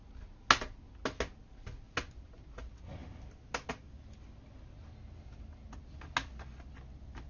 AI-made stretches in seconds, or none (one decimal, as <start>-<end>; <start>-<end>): none